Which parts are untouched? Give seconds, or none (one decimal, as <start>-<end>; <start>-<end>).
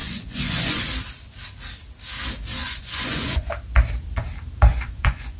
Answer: 0.8-2.6; 3.5-4.7